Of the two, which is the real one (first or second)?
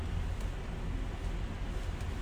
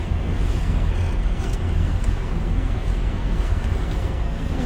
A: first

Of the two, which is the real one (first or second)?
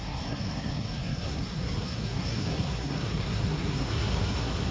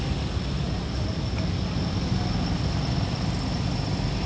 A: second